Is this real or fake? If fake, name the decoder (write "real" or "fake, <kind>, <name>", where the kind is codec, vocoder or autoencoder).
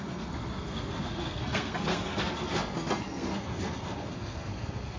fake, codec, SNAC